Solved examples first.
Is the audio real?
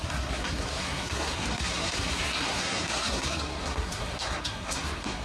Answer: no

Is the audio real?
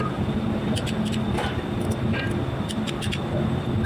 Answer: yes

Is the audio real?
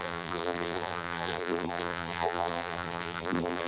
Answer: no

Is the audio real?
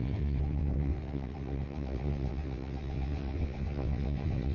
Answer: no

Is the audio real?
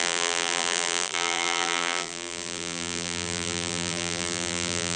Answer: no